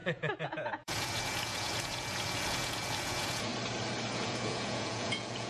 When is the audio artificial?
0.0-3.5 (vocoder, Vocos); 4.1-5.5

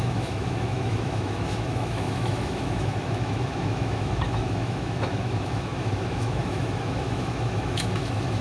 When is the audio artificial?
0.0-8.4 (autoencoder, DAC-VAE)

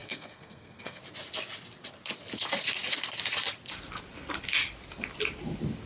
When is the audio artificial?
0.0-1.0 (codec, SNAC)

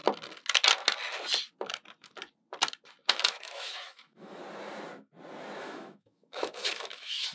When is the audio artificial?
3.1-4.4 (autoencoder, DAC-VAE); 5.6-7.3

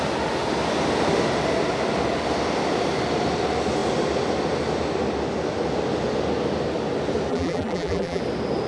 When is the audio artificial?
7.3-8.2 (vocoder, BigVGAN v2)

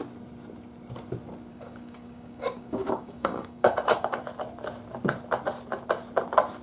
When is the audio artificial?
1.5-4.2 (codec, DAC)

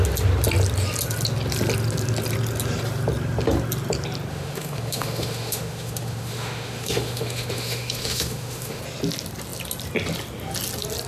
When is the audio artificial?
4.3-8.8 (autoencoder, DAC-VAE)

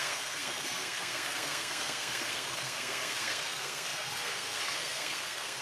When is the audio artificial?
0.0-5.6 (codec, SNAC)